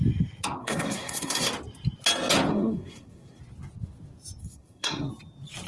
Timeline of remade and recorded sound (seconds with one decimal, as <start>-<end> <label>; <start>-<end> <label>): 0.0-0.6 recorded; 0.6-1.5 remade; 1.5-2.5 recorded; 2.5-3.4 remade; 3.4-4.4 recorded; 4.4-5.1 remade; 5.1-5.7 recorded

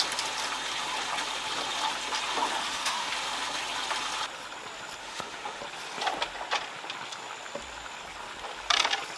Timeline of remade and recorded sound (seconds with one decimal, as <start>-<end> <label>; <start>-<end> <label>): 0.0-2.6 recorded; 2.6-3.1 remade; 3.1-5.0 recorded; 5.0-5.6 remade; 5.6-9.2 recorded

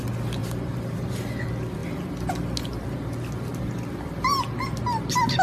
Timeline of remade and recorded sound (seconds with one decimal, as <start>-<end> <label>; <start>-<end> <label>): 0.0-0.4 recorded; 0.4-1.4 remade; 1.4-1.8 recorded; 1.8-2.3 remade; 2.3-3.5 recorded; 3.5-4.3 remade; 4.3-5.4 recorded

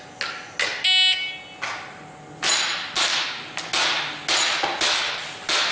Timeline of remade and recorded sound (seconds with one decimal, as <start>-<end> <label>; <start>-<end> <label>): 0.0-5.7 recorded

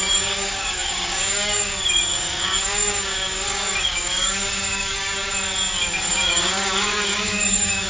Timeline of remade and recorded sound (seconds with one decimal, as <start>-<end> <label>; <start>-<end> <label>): 0.0-5.3 remade; 5.3-6.1 recorded; 6.1-7.9 remade

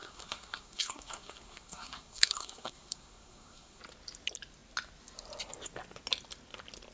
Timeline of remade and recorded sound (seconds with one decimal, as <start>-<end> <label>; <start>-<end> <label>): 0.0-3.8 remade; 3.8-6.9 recorded